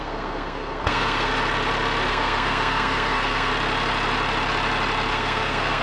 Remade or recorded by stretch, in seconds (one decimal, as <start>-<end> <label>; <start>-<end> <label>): 0.0-1.3 remade; 1.3-2.1 recorded; 2.1-3.5 remade; 3.5-5.1 recorded; 5.1-5.8 remade